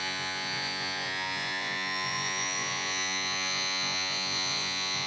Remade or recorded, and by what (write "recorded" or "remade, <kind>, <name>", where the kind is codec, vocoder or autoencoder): remade, vocoder, Vocos